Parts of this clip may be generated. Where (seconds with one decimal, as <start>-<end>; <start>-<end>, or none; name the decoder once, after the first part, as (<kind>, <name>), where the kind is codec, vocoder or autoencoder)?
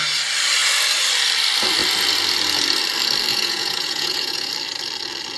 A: 3.3-4.5 (vocoder, Vocos)